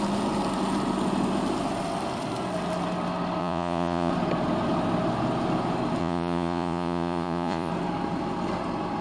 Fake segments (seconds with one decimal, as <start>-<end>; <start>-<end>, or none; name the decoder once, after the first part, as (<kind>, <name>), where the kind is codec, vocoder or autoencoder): 3.4-4.1 (vocoder, Vocos); 6.0-7.7

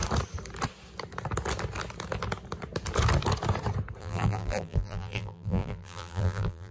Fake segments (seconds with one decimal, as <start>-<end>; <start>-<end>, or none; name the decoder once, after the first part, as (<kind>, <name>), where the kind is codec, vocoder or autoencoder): 4.0-6.7 (vocoder, BigVGAN v2)

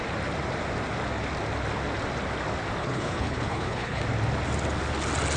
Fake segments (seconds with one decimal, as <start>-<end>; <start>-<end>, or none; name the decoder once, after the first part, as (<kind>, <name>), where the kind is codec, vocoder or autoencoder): 2.8-4.0 (codec, HILCodec)